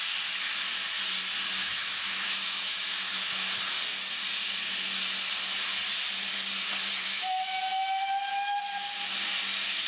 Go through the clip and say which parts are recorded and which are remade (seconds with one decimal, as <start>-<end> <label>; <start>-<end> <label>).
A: 0.0-1.6 recorded; 1.6-3.6 remade; 3.6-7.0 recorded; 7.0-8.0 remade; 8.0-9.9 recorded